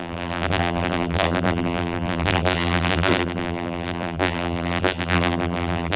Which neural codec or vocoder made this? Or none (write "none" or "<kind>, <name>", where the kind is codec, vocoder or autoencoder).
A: vocoder, BigVGAN v2